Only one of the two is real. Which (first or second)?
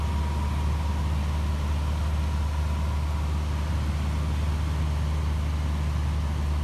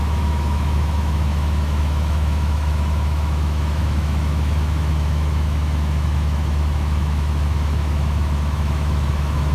first